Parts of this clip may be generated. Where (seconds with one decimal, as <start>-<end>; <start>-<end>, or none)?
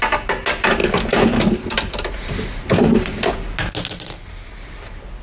none